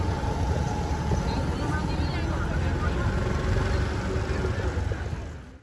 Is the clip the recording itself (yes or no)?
yes